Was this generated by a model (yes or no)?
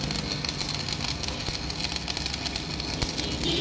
no